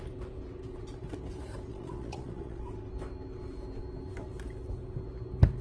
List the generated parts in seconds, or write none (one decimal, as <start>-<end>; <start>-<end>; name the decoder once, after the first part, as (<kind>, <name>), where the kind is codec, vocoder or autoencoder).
1.7-2.6 (vocoder, Vocos)